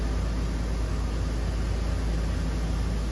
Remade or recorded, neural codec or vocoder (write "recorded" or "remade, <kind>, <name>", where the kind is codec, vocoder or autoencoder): recorded